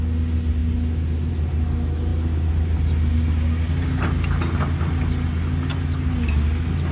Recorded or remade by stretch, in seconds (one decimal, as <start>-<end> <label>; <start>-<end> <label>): 0.0-6.9 recorded